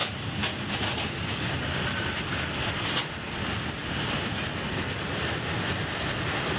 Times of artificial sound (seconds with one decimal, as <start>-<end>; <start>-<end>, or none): none